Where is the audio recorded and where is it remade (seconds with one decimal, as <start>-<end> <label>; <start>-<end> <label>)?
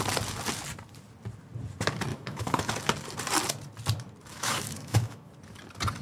0.0-2.1 recorded; 2.1-2.7 remade; 2.7-4.3 recorded; 4.3-5.3 remade; 5.3-6.0 recorded